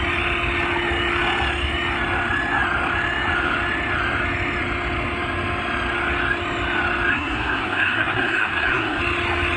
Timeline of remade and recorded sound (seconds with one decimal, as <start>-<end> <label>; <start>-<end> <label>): 0.0-7.1 recorded; 7.1-9.0 remade; 9.0-9.6 recorded